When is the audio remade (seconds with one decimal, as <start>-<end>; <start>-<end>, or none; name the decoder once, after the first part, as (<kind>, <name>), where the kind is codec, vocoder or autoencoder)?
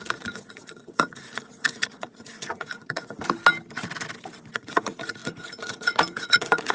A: 0.0-3.2 (vocoder, Vocos); 4.5-6.7